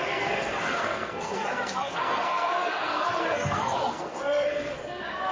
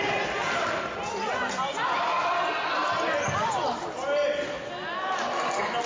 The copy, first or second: first